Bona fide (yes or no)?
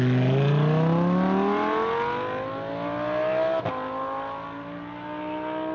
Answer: yes